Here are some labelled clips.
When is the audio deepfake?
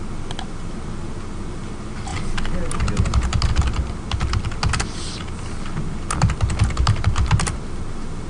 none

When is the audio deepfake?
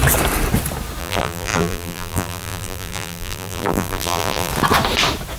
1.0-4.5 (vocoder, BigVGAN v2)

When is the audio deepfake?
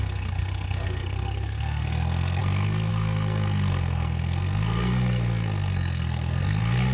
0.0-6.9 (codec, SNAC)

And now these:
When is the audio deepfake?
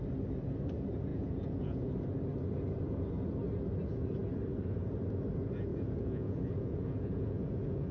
1.1-1.9 (vocoder, Vocos); 5.7-7.9